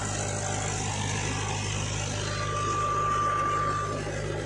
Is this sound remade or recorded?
recorded